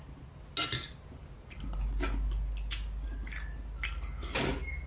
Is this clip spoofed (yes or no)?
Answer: no